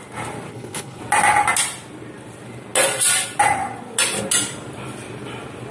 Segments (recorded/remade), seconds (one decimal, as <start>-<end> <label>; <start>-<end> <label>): 0.0-0.5 recorded; 0.5-1.0 remade; 1.0-5.7 recorded